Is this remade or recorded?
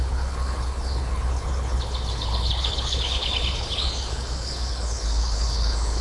remade